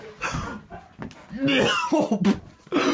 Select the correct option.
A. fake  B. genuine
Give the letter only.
B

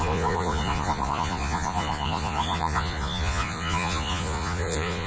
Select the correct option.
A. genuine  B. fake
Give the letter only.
B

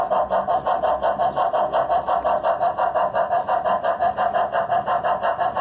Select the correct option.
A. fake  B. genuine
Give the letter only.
B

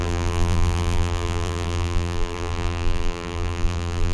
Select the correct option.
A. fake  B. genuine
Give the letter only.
A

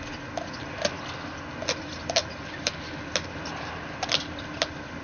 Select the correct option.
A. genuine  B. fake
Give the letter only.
A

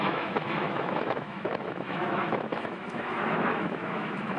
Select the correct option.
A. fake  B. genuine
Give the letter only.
A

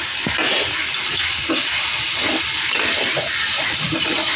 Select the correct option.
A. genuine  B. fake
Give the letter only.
A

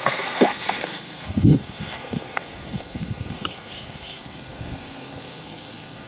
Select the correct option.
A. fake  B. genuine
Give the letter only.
A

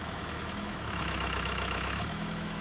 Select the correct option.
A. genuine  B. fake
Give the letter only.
B